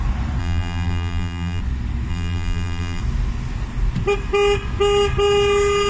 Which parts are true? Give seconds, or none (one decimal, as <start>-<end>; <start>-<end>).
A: 0.0-0.4; 1.6-2.1; 3.0-5.9